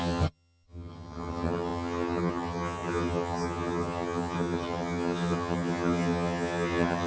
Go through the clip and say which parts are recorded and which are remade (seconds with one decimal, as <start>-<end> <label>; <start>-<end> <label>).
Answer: 0.0-7.1 remade